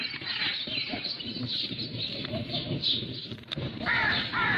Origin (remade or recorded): remade